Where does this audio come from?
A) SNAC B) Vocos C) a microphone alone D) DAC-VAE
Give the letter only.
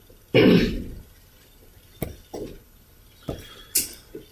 C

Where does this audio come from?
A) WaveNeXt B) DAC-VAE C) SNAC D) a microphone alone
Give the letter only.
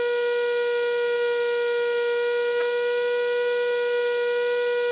D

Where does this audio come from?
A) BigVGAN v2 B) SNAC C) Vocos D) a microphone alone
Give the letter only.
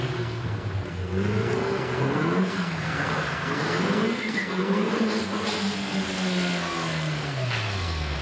B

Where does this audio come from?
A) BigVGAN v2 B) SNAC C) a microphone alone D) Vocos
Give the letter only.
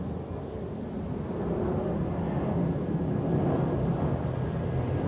C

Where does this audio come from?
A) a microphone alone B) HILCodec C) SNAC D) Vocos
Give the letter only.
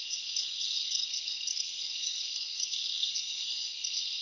C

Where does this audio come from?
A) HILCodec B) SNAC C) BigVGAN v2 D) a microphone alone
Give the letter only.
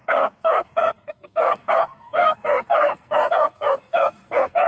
B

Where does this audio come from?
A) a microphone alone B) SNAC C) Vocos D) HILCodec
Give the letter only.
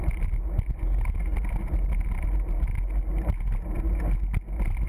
A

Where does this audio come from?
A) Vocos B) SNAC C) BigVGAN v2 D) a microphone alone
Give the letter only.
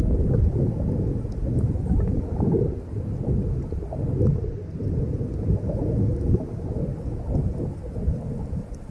D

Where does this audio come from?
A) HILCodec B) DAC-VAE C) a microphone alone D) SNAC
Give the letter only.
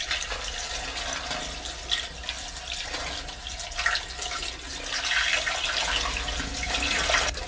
C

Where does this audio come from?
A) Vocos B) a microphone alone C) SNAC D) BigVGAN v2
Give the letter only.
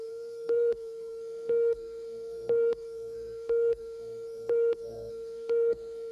C